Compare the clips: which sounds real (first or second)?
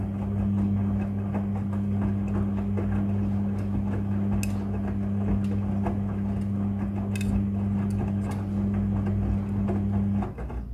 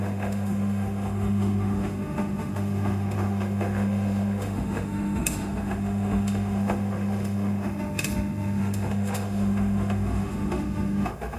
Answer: first